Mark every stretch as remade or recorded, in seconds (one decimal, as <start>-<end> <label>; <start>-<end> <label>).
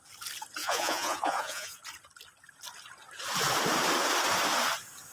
0.0-0.6 recorded; 0.6-1.8 remade; 1.8-5.1 recorded